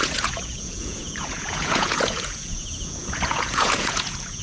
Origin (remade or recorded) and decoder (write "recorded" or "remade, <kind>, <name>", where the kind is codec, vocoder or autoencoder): remade, vocoder, Vocos